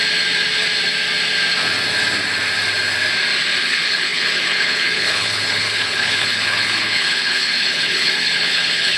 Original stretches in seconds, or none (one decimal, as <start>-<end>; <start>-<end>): 0.0-3.6